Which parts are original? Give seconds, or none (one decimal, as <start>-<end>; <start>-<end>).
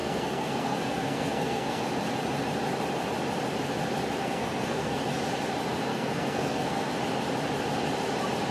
1.8-4.2; 5.0-5.9; 6.9-8.5